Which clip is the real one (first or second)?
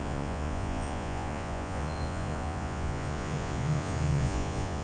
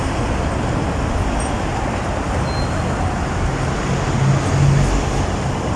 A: second